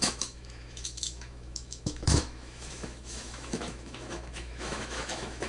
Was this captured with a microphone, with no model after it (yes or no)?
no